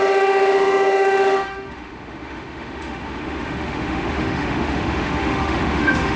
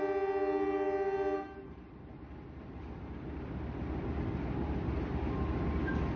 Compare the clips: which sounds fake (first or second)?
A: first